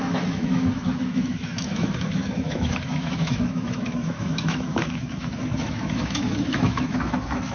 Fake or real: fake